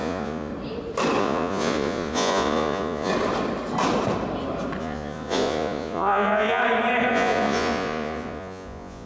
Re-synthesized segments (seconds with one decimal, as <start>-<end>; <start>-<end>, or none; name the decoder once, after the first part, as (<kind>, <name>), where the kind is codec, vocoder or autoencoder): 0.0-0.5 (vocoder, Vocos); 1.2-3.1; 4.8-6.6; 7.1-9.1